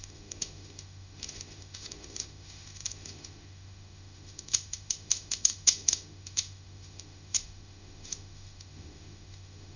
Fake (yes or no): yes